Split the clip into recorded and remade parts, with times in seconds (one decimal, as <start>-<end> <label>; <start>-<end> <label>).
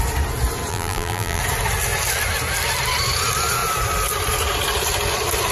0.0-0.7 recorded; 0.7-1.4 remade; 1.4-5.5 recorded